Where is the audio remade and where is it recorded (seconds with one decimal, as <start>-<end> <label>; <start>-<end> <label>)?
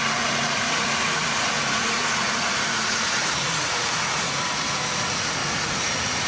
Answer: 0.0-6.3 remade